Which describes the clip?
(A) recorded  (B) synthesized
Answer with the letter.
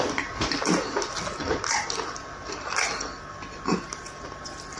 A